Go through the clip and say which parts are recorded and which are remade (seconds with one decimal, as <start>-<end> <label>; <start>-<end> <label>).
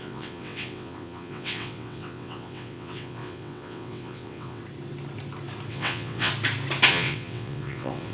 0.0-4.6 remade; 4.6-5.7 recorded; 5.7-6.3 remade; 6.3-6.9 recorded; 6.9-8.1 remade